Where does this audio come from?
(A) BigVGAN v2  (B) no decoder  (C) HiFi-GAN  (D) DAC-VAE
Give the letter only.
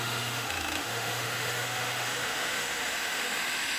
D